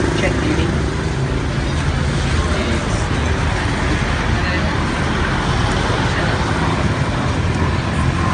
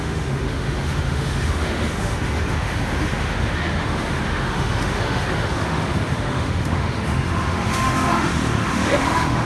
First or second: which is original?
first